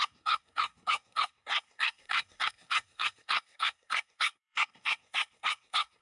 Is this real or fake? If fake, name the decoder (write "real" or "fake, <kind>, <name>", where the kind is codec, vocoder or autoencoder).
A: fake, codec, SNAC